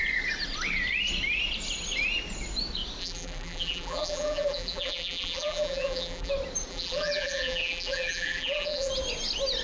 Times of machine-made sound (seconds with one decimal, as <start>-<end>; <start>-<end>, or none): 3.0-6.3; 6.7-8.9